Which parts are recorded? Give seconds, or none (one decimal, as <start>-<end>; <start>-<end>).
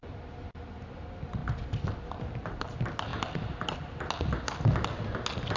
0.0-5.6